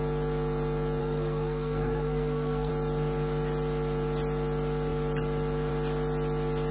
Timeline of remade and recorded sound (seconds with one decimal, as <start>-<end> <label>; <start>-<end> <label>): 0.0-1.0 recorded; 1.0-2.7 remade; 2.7-6.7 recorded